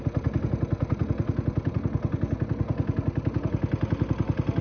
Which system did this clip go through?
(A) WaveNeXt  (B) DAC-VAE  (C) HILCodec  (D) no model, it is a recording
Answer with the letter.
D